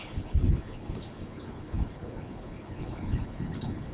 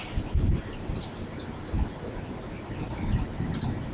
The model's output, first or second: first